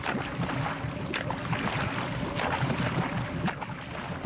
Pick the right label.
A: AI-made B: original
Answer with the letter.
B